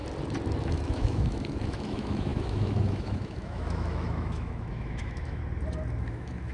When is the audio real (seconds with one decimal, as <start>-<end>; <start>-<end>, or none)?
0.0-0.6; 5.4-6.0